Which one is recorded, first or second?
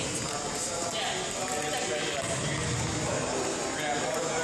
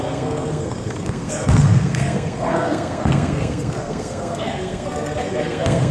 first